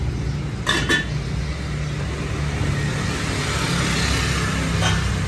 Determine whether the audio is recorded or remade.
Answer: recorded